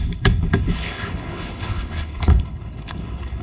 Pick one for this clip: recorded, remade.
remade